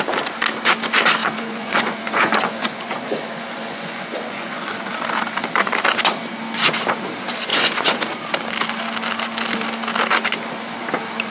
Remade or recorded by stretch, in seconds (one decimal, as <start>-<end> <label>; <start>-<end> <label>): 0.0-1.2 recorded; 1.2-4.8 remade; 4.8-7.5 recorded; 7.5-8.1 remade; 8.1-11.3 recorded